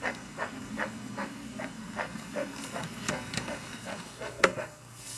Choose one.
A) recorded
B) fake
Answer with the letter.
B